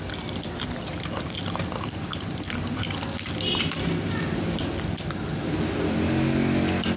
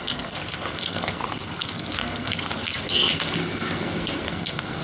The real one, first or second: first